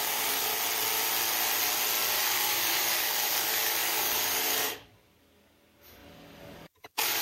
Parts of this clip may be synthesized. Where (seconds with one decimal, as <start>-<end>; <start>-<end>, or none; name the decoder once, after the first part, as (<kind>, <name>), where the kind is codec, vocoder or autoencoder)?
0.0-0.5 (codec, DAC); 2.2-7.2